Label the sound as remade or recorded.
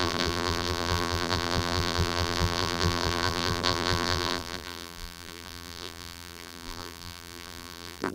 remade